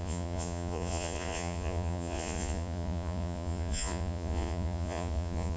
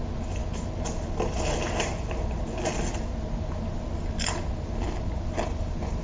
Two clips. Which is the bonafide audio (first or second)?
second